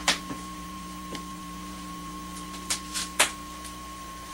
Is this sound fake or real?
fake